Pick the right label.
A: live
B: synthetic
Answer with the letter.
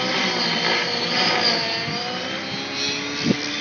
A